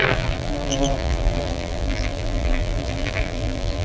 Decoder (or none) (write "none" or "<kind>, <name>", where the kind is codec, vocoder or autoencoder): vocoder, BigVGAN v2